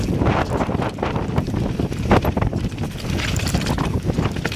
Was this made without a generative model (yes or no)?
yes